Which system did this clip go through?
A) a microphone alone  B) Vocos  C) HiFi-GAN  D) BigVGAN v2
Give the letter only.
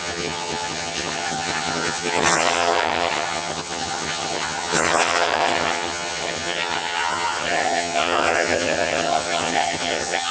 C